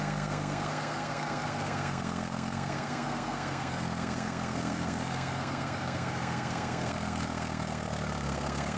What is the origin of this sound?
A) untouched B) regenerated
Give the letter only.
B